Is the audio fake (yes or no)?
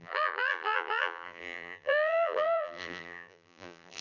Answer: yes